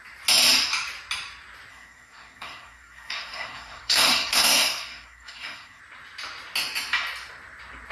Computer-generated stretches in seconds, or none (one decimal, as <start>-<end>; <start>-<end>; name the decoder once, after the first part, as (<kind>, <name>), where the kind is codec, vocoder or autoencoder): 1.7-5.8 (codec, SNAC)